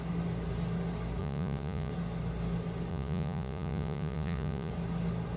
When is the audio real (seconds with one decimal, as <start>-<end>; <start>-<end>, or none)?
0.0-1.2; 1.9-2.9; 4.7-5.4